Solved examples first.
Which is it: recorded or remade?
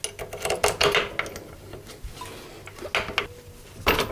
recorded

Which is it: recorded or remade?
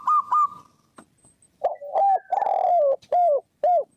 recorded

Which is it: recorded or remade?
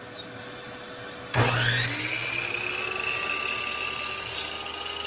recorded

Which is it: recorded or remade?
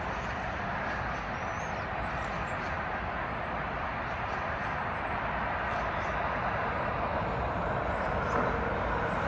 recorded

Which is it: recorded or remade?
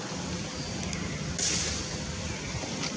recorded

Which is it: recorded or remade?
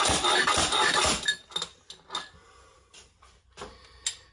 recorded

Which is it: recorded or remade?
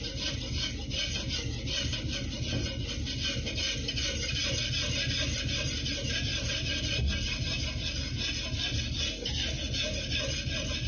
recorded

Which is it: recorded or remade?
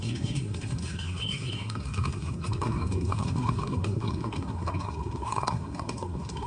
remade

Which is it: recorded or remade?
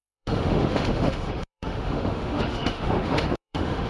remade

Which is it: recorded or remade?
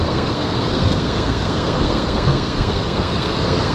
remade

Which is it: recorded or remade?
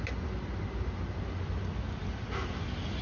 recorded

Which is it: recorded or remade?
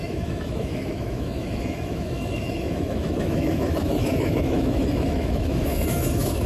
remade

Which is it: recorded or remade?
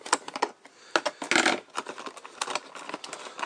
recorded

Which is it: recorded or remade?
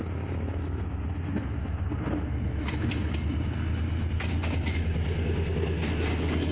recorded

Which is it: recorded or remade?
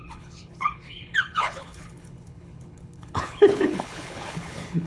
remade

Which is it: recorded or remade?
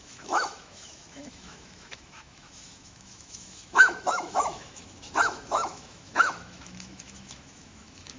remade